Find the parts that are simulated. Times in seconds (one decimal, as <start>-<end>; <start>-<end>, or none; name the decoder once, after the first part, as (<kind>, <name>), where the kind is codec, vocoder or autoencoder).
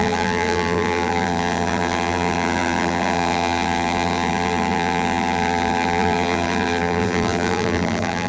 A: 0.0-8.3 (vocoder, BigVGAN v2)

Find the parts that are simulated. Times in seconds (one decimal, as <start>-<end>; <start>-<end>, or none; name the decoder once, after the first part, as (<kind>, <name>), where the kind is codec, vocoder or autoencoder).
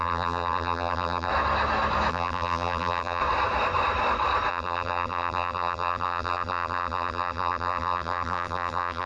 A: 0.0-1.3 (vocoder, BigVGAN v2); 2.1-3.2; 4.5-9.1